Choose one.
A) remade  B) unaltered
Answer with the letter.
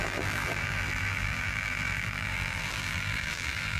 A